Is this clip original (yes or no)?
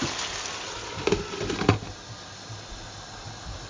yes